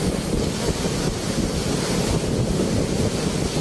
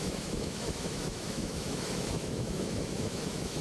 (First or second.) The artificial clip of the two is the second